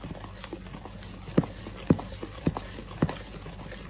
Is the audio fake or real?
real